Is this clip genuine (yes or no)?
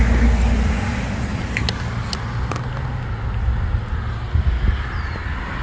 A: yes